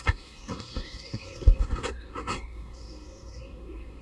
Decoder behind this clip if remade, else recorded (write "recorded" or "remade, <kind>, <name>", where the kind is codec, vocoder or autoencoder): remade, codec, SNAC